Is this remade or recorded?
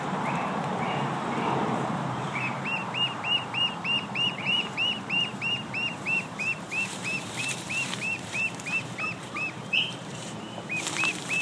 remade